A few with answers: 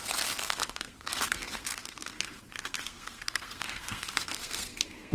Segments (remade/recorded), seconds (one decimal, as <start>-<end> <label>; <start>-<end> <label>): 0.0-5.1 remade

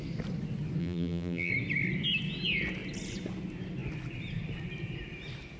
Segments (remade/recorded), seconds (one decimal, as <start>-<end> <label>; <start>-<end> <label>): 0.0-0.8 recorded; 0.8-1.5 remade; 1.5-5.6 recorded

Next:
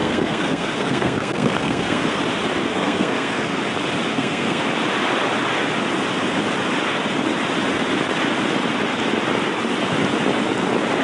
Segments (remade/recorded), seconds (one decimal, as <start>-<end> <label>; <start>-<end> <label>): 0.0-2.2 remade; 2.2-2.6 recorded; 2.6-3.6 remade; 3.6-4.1 recorded; 4.1-4.6 remade; 4.6-11.0 recorded